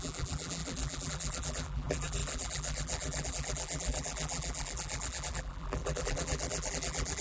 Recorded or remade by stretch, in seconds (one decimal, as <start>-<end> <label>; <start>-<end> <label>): 0.0-7.2 remade